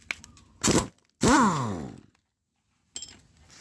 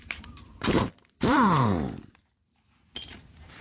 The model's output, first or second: second